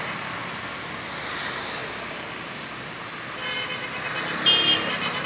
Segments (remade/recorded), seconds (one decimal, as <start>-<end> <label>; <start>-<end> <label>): 0.0-5.3 recorded